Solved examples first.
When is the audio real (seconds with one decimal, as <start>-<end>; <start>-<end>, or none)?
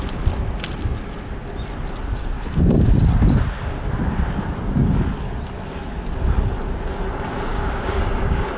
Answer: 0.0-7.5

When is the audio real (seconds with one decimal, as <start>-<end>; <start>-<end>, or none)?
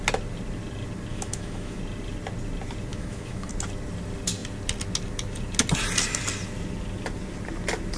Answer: 0.0-1.1; 1.8-2.9; 3.5-8.0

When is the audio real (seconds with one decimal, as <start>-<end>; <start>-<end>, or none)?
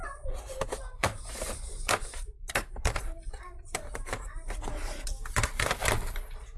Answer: 0.0-0.8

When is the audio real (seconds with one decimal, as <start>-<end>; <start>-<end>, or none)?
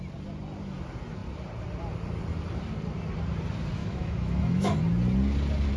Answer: 0.0-3.8; 4.8-5.8